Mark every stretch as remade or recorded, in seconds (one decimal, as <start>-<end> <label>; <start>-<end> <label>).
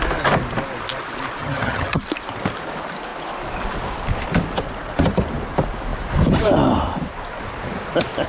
0.0-1.4 recorded; 1.4-2.0 remade; 2.0-8.3 recorded